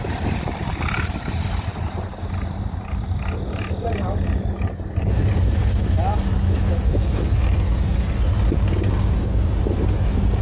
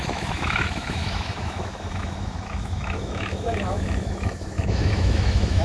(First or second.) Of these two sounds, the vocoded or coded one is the second